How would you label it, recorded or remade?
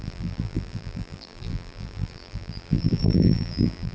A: remade